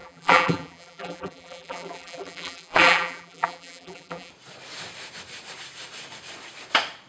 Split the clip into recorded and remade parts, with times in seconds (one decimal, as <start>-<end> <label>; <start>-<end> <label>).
0.0-4.3 remade; 4.3-7.1 recorded